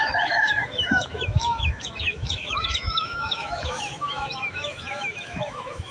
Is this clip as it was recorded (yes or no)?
no